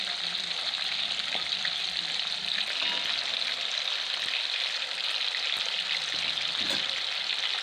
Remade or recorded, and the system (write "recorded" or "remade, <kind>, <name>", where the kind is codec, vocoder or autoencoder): recorded